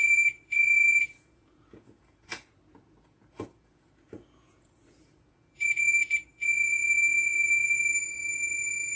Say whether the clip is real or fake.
fake